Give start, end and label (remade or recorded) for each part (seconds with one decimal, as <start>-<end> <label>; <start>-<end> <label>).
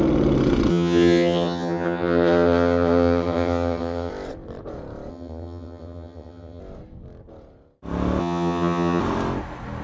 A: 0.0-0.7 recorded; 0.7-4.1 remade; 4.1-5.1 recorded; 5.1-6.6 remade; 6.6-8.2 recorded; 8.2-9.0 remade; 9.0-9.8 recorded